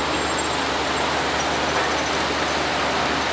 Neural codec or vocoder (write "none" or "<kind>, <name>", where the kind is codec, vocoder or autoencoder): none